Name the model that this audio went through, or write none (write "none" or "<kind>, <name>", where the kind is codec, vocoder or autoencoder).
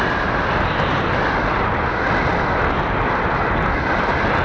none